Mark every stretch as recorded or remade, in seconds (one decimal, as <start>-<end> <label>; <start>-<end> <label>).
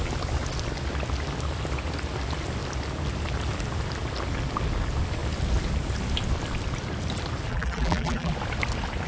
0.0-7.5 recorded; 7.5-8.3 remade; 8.3-9.1 recorded